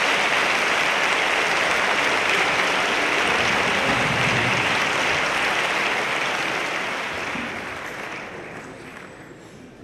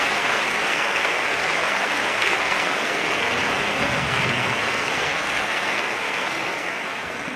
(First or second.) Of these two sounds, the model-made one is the second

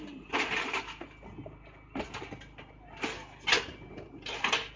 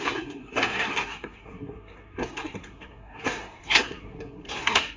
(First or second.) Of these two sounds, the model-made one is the second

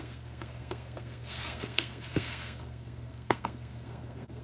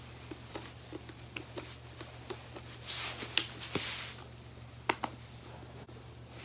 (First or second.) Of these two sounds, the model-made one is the first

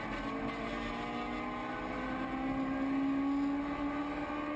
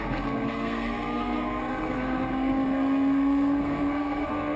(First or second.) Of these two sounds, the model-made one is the second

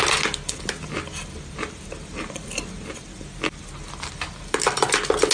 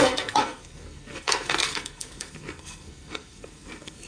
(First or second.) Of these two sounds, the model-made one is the second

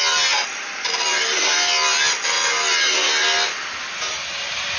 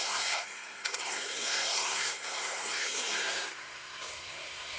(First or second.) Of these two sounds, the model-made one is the second